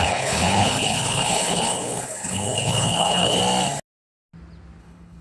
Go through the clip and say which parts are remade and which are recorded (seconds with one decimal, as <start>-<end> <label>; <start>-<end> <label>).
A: 0.0-3.4 remade; 3.4-4.8 recorded; 4.8-5.2 remade